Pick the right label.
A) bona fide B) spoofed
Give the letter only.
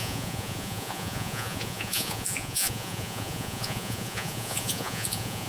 B